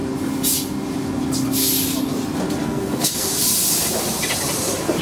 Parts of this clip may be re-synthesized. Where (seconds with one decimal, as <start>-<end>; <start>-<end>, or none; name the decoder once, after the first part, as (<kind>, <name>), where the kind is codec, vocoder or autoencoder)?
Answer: 2.6-3.3 (codec, SNAC)